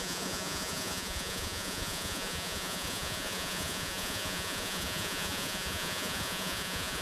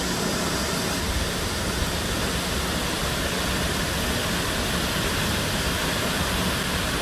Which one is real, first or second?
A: second